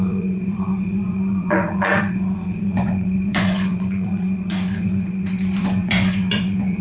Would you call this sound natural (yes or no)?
no